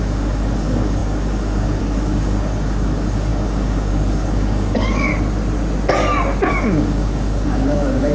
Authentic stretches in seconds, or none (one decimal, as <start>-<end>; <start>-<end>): 5.1-6.5